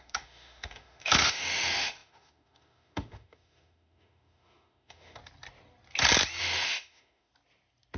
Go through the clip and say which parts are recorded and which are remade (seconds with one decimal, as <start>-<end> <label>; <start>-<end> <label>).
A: 0.0-5.2 remade; 5.2-6.4 recorded; 6.4-7.3 remade; 7.3-8.0 recorded